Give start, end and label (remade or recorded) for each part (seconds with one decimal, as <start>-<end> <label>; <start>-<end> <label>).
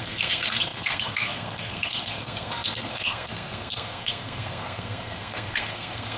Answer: 0.0-6.2 remade